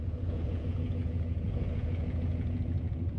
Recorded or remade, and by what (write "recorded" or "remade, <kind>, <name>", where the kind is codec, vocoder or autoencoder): remade, vocoder, Vocos